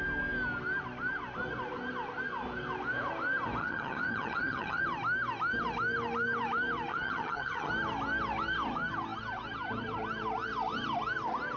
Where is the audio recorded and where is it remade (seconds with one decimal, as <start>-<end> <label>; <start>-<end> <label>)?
0.0-3.6 recorded; 3.6-4.8 remade; 4.8-6.9 recorded; 6.9-7.7 remade; 7.7-11.6 recorded